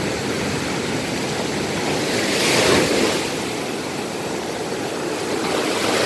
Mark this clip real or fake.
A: real